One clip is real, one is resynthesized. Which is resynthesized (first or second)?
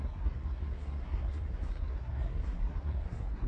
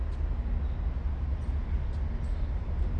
first